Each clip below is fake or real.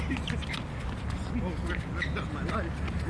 real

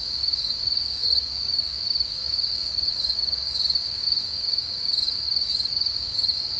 fake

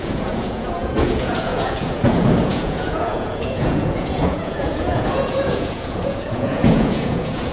fake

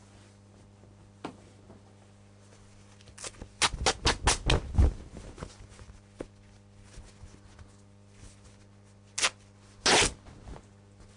real